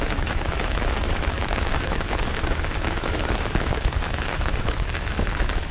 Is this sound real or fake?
fake